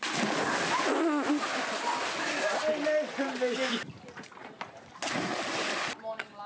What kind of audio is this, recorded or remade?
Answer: recorded